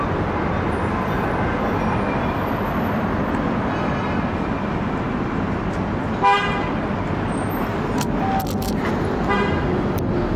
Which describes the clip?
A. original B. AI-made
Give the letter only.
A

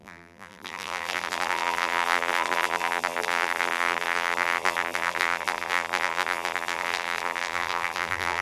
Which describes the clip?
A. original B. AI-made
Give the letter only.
B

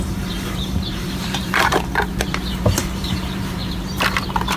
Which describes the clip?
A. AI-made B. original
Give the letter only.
A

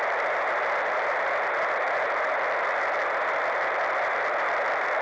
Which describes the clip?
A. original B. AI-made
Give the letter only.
A